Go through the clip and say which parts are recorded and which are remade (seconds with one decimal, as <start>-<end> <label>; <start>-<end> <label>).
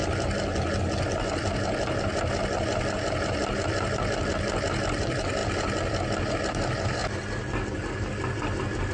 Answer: 0.0-8.9 recorded